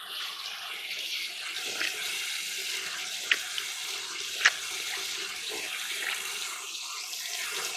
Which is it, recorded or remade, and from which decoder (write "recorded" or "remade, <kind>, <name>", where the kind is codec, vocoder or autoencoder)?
recorded